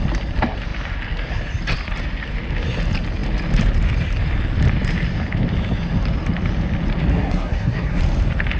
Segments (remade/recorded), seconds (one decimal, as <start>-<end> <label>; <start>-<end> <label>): 0.0-7.1 recorded; 7.1-8.0 remade; 8.0-8.6 recorded